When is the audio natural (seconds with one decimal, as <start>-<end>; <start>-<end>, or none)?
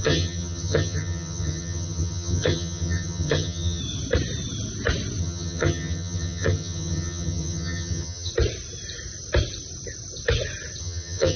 3.8-5.2; 8.3-10.8